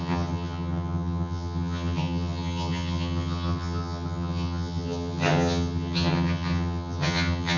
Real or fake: fake